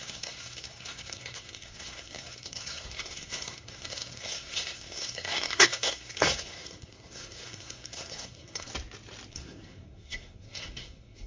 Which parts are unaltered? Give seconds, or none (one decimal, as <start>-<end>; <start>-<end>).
8.7-9.3